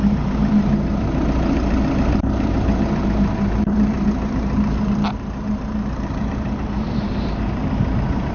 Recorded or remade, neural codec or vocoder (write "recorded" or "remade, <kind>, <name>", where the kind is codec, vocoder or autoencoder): remade, vocoder, BigVGAN v2